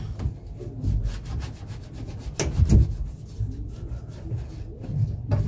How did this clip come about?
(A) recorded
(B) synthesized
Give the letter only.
A